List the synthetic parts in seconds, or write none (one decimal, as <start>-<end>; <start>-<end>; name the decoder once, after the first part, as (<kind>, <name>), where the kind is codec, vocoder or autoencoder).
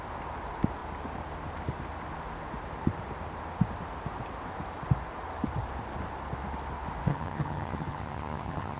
7.1-8.8 (vocoder, HiFi-GAN)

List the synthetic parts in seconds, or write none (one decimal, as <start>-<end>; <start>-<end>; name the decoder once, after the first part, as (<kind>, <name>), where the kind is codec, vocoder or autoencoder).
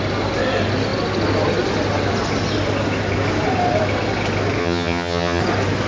4.6-5.4 (vocoder, HiFi-GAN)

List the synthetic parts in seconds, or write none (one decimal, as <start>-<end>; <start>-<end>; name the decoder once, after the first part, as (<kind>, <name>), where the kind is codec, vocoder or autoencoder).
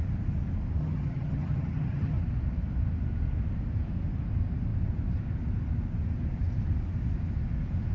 0.8-2.2 (vocoder, HiFi-GAN)